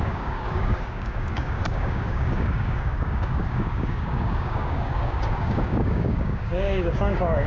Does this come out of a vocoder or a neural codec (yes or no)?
yes